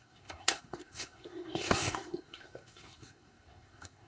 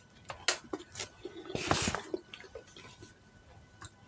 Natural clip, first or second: second